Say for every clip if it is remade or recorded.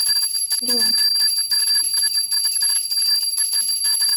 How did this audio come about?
recorded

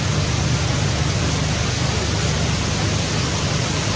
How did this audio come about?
recorded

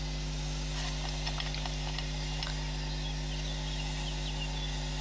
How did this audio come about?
recorded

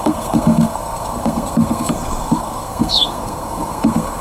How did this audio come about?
remade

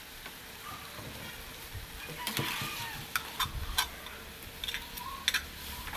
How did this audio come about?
recorded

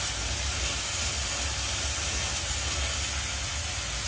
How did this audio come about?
recorded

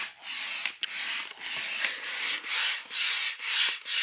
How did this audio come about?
recorded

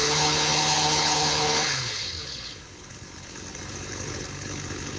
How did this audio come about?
remade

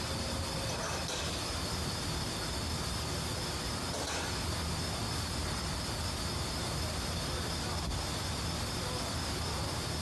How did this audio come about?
recorded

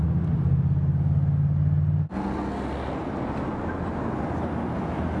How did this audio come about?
recorded